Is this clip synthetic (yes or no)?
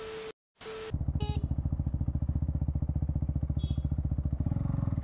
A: no